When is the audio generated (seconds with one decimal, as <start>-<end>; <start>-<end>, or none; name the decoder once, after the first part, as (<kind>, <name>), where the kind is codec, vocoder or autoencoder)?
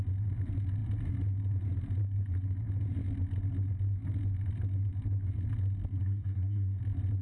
6.0-6.8 (codec, SNAC)